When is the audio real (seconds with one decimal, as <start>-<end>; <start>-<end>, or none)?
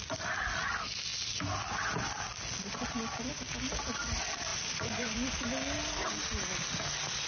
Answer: 0.0-4.5; 5.3-7.3